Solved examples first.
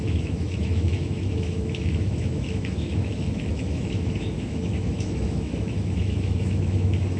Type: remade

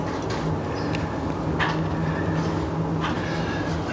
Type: recorded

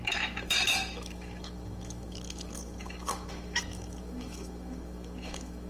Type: remade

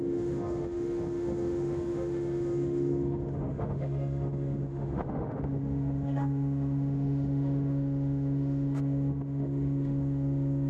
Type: remade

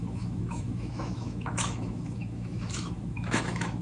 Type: remade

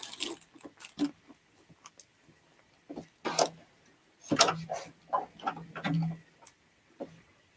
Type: recorded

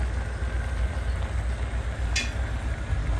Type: recorded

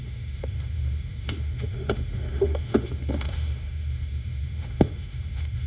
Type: remade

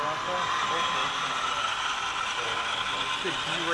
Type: recorded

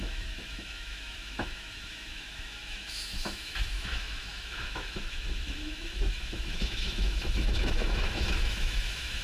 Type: remade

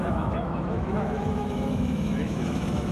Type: remade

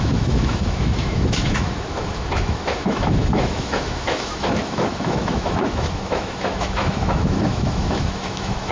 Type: remade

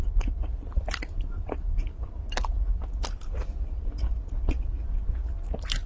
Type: recorded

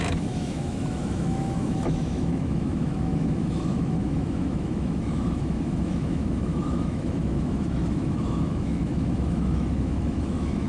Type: remade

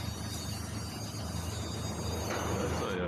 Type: recorded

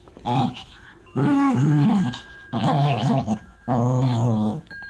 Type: remade